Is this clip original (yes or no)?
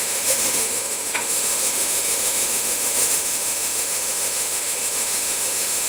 no